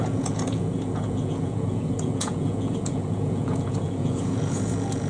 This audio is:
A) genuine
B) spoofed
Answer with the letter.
B